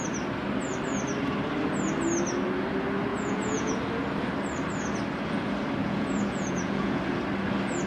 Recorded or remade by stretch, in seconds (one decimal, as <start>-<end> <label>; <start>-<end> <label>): 0.0-3.1 recorded; 3.1-3.8 remade; 3.8-5.8 recorded; 5.8-7.0 remade; 7.0-7.9 recorded

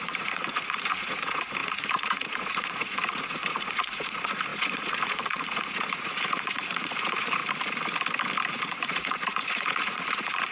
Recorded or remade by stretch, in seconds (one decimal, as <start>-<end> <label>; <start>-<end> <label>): 0.0-7.4 remade; 7.4-8.5 recorded; 8.5-10.5 remade

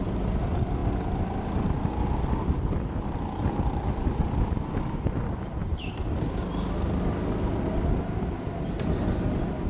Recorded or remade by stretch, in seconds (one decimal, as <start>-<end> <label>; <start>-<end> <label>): 0.0-9.7 recorded

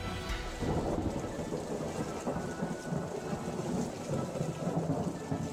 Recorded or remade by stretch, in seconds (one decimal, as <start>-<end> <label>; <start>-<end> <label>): 0.0-5.5 recorded

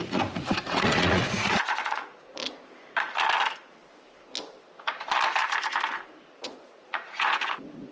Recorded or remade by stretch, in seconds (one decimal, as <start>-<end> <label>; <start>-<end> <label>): 0.0-2.4 remade; 2.4-6.3 recorded; 6.3-7.9 remade